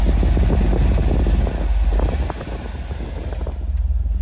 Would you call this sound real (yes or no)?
yes